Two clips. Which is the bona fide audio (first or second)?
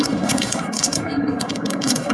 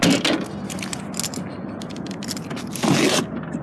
second